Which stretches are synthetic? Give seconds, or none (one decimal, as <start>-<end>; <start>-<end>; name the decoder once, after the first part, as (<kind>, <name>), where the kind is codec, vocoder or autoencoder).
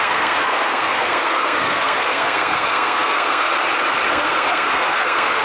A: 0.0-3.5 (codec, SNAC); 4.1-5.4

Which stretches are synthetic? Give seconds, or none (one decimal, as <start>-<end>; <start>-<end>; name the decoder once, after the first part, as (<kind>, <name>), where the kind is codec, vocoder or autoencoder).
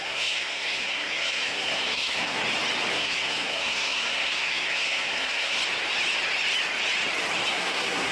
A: 0.0-2.4 (codec, SNAC); 2.9-5.6; 7.5-8.1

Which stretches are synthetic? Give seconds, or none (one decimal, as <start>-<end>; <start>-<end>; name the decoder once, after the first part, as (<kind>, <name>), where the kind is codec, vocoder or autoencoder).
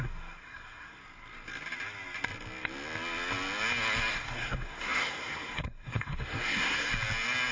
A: 0.0-1.0 (codec, SNAC); 4.1-6.9